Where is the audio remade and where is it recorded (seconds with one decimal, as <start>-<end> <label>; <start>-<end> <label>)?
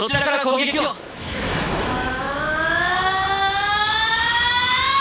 0.0-5.0 remade